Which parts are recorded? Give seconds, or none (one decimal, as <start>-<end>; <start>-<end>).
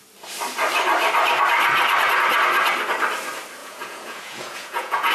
0.0-3.6